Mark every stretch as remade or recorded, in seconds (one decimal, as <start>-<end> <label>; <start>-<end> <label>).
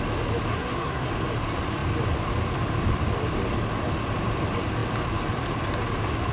0.0-0.5 recorded; 0.5-1.1 remade; 1.1-6.3 recorded